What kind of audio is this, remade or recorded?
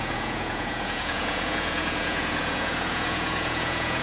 remade